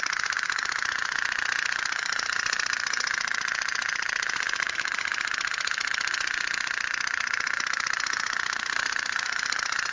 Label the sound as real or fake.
fake